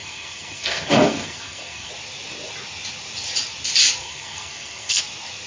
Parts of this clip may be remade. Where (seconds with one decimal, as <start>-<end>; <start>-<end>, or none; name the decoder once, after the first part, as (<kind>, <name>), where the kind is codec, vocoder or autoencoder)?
0.0-1.9 (codec, SNAC); 4.0-5.0